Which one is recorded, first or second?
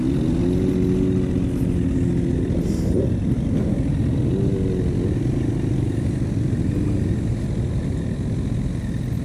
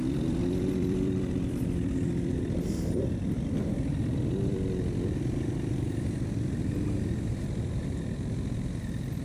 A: first